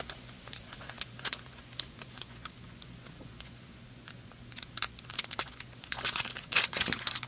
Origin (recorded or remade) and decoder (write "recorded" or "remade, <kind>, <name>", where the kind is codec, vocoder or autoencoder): remade, vocoder, Vocos